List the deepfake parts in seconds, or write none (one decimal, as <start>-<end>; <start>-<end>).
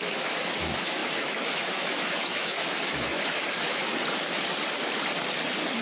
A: 0.0-3.9